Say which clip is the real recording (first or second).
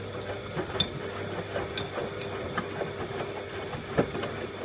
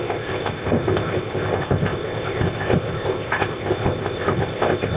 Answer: first